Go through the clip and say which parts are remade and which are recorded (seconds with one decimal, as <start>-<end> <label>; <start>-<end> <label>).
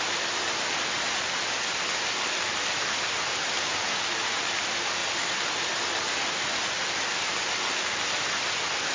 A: 0.0-8.9 recorded